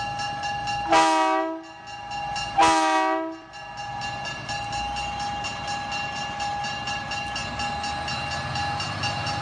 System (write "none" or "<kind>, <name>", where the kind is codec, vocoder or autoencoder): none